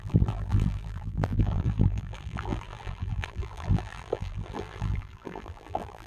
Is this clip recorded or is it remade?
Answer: remade